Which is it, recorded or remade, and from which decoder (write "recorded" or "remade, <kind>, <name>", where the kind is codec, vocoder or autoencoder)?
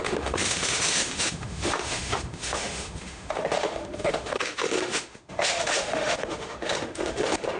remade, autoencoder, DAC-VAE